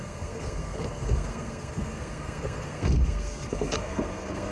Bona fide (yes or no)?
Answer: no